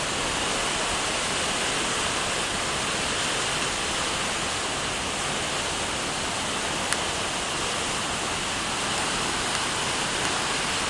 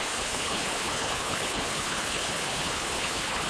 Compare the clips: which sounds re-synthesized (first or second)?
second